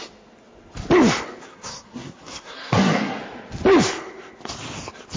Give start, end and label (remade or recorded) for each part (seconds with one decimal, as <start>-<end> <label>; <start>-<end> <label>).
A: 0.0-1.4 recorded; 1.4-3.2 remade; 3.2-5.2 recorded